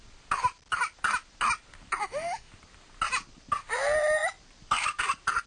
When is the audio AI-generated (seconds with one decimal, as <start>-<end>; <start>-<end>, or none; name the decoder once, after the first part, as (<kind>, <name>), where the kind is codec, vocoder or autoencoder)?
2.0-2.5 (autoencoder, DAC-VAE)